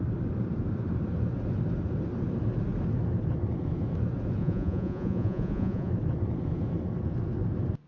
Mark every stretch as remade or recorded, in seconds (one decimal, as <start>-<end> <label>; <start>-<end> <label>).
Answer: 0.0-4.4 recorded; 4.4-5.9 remade; 5.9-7.9 recorded